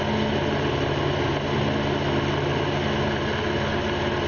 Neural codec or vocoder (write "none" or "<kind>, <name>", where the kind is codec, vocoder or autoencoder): none